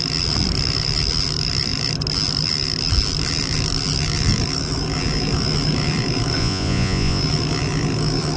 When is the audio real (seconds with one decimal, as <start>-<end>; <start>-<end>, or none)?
0.0-6.4; 7.2-8.4